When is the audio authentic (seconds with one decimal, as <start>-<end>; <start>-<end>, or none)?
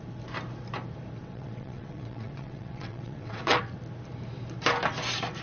0.0-1.2; 3.6-5.4